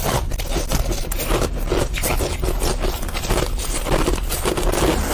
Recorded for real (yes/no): yes